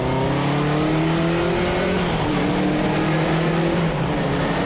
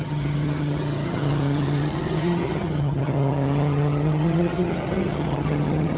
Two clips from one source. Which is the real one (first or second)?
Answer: first